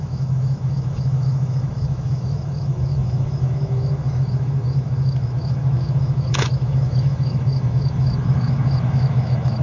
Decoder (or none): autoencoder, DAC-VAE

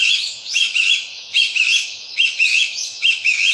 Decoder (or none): autoencoder, DAC-VAE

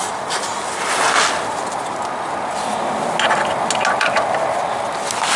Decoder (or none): none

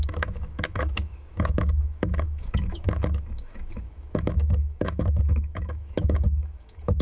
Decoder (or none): autoencoder, DAC-VAE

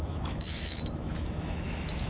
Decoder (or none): autoencoder, DAC-VAE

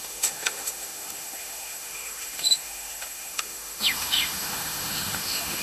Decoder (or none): autoencoder, DAC-VAE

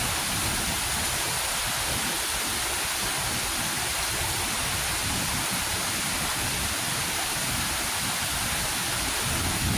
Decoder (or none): none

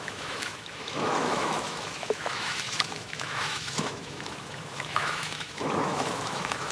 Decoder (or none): autoencoder, DAC-VAE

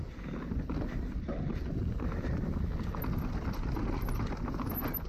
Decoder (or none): none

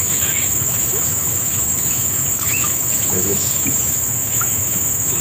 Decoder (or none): autoencoder, DAC-VAE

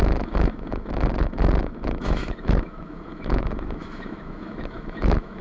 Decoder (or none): autoencoder, DAC-VAE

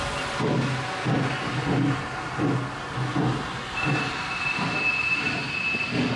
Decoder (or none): none